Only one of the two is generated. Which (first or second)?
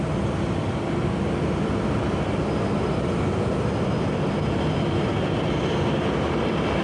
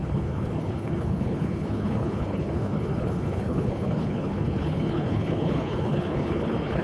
second